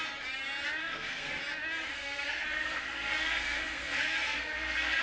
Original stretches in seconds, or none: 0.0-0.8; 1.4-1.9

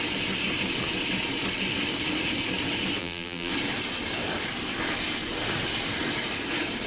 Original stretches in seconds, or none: 0.0-3.0; 3.5-6.9

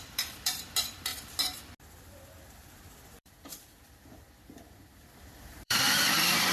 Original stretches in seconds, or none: 1.1-2.5

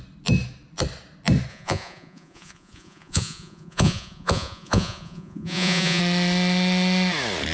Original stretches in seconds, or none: 0.0-1.5; 6.0-7.5

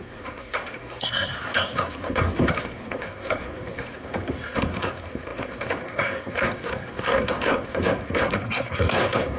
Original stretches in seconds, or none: none